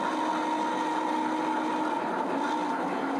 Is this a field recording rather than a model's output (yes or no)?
yes